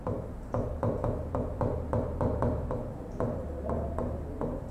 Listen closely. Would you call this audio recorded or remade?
remade